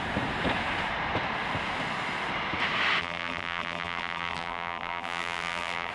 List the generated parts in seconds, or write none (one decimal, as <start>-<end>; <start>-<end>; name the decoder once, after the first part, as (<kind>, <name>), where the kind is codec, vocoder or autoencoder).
3.0-5.9 (vocoder, BigVGAN v2)